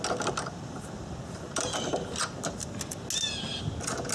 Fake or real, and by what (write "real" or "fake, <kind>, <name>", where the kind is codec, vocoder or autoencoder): real